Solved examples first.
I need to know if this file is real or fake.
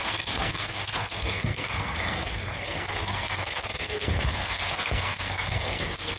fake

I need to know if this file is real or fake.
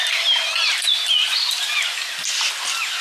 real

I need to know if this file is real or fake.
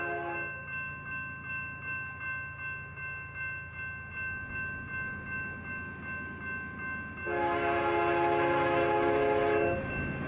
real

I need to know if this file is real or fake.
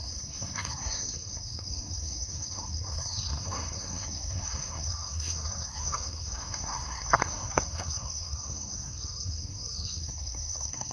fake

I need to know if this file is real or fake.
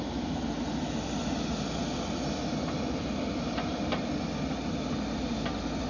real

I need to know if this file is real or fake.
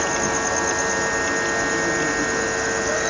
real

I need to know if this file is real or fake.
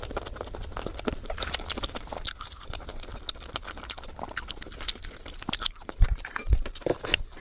real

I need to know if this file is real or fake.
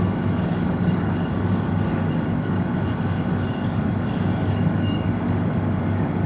fake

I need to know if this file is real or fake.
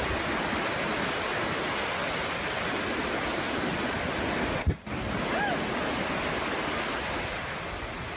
real